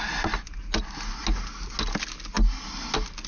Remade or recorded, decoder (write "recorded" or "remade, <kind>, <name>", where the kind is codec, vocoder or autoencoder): recorded